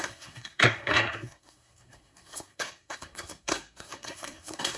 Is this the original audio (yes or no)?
no